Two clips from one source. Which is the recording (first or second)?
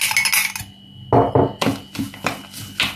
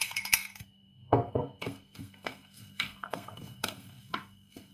first